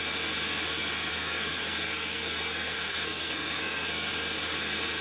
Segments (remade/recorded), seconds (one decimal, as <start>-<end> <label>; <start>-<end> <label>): 0.0-1.1 recorded; 1.1-4.1 remade; 4.1-5.0 recorded

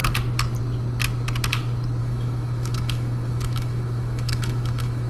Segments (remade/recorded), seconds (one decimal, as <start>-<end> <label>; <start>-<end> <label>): 0.0-2.0 recorded; 2.0-5.1 remade

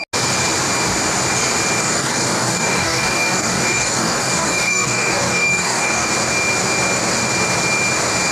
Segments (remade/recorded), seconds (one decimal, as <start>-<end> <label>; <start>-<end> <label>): 0.0-1.8 recorded; 1.8-6.1 remade; 6.1-8.3 recorded

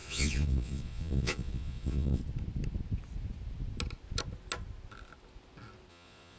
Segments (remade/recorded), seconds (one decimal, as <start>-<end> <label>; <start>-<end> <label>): 0.0-2.2 remade; 2.2-5.9 recorded; 5.9-6.4 remade

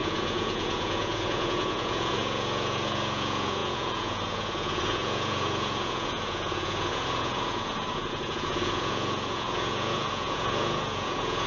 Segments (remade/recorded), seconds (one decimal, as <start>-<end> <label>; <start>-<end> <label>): 0.0-11.5 remade

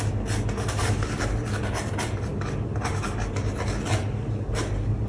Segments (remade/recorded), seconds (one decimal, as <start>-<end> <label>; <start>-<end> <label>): 0.0-5.1 recorded

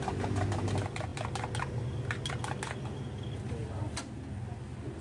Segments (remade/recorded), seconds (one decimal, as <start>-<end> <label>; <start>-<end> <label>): 0.0-5.0 recorded